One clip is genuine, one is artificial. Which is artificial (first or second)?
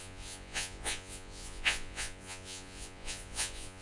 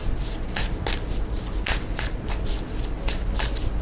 first